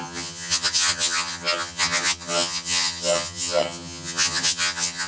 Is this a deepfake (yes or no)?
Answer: yes